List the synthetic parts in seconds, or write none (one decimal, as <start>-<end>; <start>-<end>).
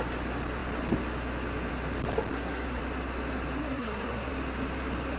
2.3-2.8; 3.6-4.3